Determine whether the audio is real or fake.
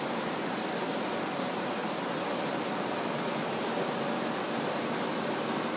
real